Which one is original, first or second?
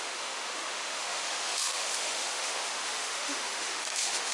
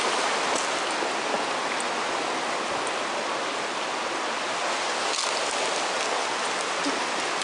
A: second